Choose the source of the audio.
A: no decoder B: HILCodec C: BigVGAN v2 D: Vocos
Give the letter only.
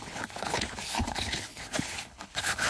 B